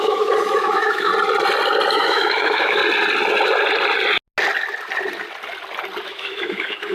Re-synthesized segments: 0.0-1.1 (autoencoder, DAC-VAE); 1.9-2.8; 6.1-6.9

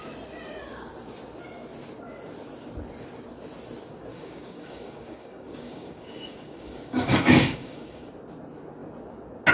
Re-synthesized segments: 4.1-8.1 (codec, DAC)

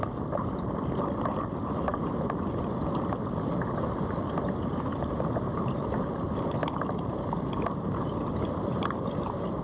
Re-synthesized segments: 0.0-1.9 (vocoder, BigVGAN v2); 2.6-9.6

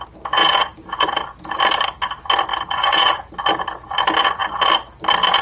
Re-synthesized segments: 0.4-1.6 (vocoder, Vocos); 2.5-3.3

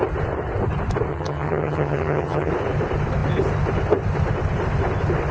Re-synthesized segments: 1.1-2.5 (vocoder, HiFi-GAN)

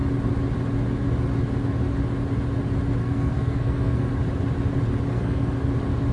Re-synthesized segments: 3.0-4.1 (codec, SNAC); 5.1-5.6